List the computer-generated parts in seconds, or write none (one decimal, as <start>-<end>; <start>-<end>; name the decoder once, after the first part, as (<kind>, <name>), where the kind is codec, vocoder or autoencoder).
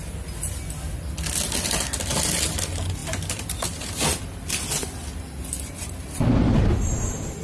none